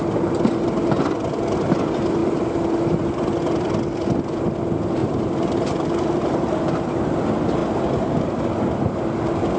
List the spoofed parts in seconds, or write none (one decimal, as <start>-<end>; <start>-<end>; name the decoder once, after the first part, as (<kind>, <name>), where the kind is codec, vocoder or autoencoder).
5.0-7.0 (vocoder, BigVGAN v2); 7.6-8.4